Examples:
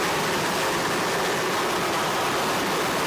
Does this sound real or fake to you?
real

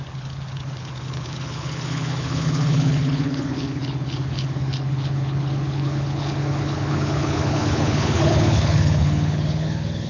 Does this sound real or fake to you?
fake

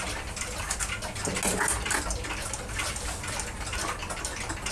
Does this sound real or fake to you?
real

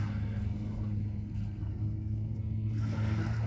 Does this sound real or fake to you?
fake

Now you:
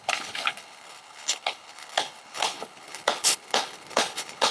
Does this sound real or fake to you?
fake